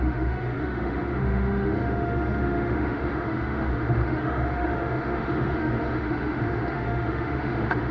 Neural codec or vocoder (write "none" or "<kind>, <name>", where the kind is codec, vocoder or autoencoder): autoencoder, DAC-VAE